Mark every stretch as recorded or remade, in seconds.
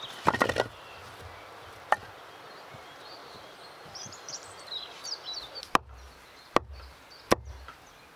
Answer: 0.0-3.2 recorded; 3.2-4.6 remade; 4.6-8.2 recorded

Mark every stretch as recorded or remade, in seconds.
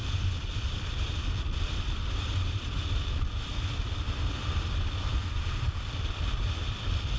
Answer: 0.0-1.6 recorded; 1.6-7.2 remade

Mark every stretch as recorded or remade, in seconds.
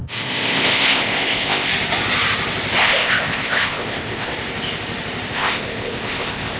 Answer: 0.0-1.7 remade; 1.7-2.8 recorded; 2.8-4.3 remade; 4.3-5.3 recorded; 5.3-6.6 remade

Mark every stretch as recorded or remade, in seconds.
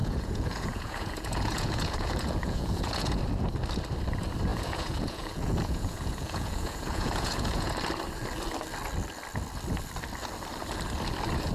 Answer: 0.0-3.2 remade; 3.2-4.5 recorded; 4.5-7.7 remade; 7.7-11.5 recorded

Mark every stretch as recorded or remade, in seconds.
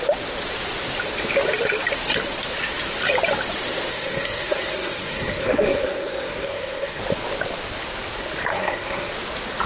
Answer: 0.0-3.9 recorded; 3.9-7.0 remade; 7.0-8.5 recorded; 8.5-9.1 remade; 9.1-9.7 recorded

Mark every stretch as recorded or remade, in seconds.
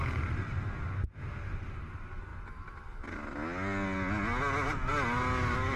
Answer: 0.0-5.8 recorded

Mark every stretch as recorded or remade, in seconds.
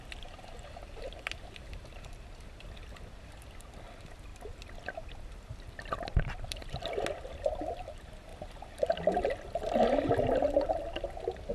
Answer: 0.0-11.5 recorded